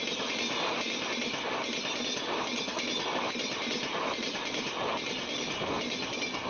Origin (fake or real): real